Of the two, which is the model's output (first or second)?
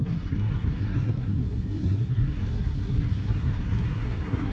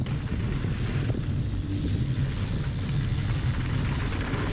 first